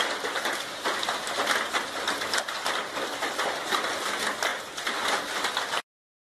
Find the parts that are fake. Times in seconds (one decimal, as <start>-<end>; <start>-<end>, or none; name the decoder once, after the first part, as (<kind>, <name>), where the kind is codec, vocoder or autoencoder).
none